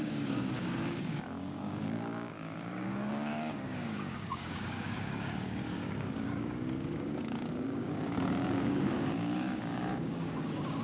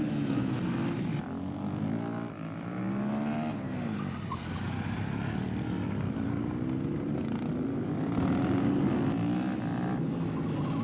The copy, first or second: first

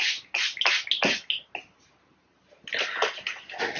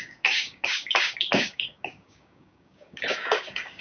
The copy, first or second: second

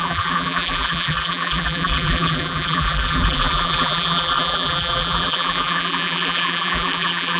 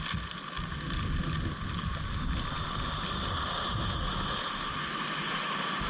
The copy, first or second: first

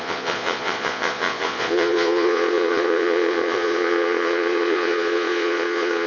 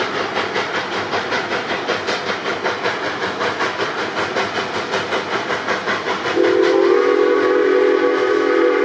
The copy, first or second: first